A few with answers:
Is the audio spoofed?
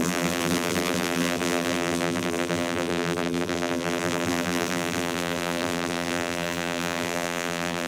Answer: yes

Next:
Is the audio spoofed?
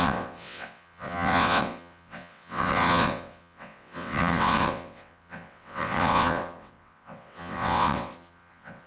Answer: yes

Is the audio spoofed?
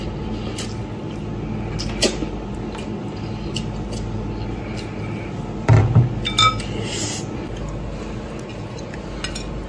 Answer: no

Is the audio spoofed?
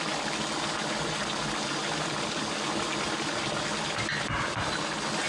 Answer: no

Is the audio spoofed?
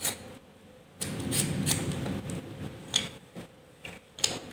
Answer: no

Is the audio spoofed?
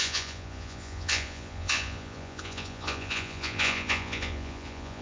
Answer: yes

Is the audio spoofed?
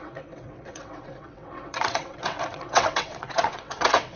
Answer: yes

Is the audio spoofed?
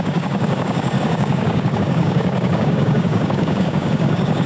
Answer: yes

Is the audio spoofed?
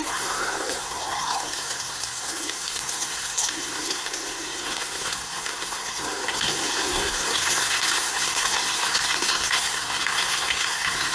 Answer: yes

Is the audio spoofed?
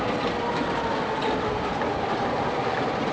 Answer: yes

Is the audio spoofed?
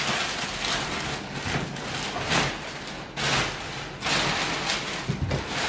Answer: no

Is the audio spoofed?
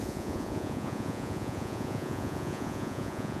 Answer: yes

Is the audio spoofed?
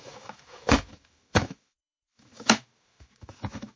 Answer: yes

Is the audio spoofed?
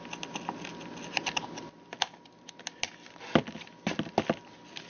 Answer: no